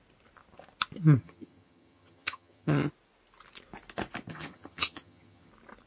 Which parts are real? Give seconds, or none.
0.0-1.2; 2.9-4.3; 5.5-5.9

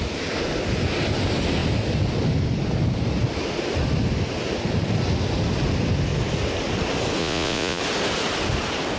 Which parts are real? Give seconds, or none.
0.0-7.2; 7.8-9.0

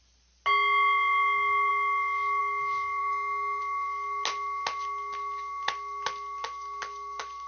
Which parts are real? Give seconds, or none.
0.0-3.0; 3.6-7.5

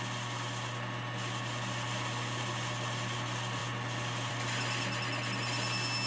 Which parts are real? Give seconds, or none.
0.0-6.1

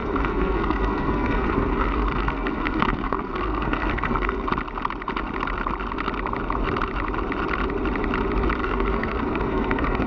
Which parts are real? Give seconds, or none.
4.5-8.6